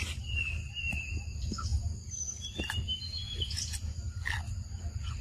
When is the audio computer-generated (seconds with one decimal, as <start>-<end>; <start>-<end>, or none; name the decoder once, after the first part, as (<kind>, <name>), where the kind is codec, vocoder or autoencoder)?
none